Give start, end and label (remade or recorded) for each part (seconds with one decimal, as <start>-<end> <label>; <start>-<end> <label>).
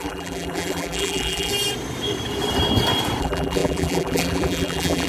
0.0-1.5 remade; 1.5-3.2 recorded; 3.2-5.1 remade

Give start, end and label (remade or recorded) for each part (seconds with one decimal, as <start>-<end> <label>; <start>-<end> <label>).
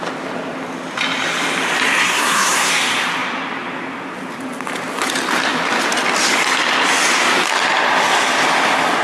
0.0-2.0 recorded; 2.0-2.7 remade; 2.7-9.0 recorded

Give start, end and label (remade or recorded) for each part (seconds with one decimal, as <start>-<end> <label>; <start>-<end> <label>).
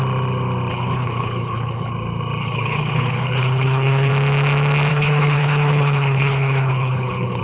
0.0-0.7 recorded; 0.7-1.9 remade; 1.9-2.4 recorded; 2.4-4.1 remade; 4.1-4.9 recorded; 4.9-7.4 remade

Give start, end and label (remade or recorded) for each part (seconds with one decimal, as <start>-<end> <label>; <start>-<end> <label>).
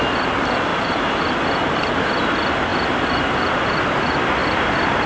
0.0-0.7 recorded; 0.7-1.3 remade; 1.3-5.1 recorded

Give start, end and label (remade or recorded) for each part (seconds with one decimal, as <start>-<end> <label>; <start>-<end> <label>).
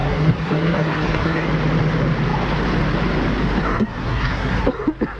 0.0-1.5 remade; 1.5-3.7 recorded; 3.7-4.7 remade; 4.7-5.2 recorded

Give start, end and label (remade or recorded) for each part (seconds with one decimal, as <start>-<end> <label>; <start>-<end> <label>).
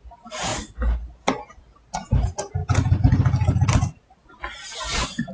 0.0-5.3 recorded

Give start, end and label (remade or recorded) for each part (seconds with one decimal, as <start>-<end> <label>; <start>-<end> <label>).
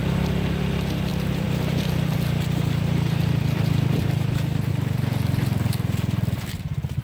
0.0-0.6 remade; 0.6-1.1 recorded; 1.1-4.7 remade; 4.7-7.0 recorded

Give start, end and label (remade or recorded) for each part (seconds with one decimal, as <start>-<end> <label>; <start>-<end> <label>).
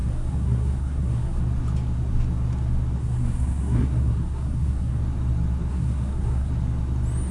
0.0-1.4 remade; 1.4-3.0 recorded; 3.0-5.0 remade; 5.0-5.7 recorded; 5.7-6.5 remade; 6.5-7.3 recorded